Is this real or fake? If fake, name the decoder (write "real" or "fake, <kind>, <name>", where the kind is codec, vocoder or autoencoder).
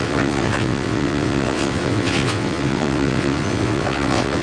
fake, vocoder, WaveNeXt